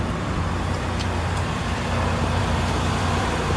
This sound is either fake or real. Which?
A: fake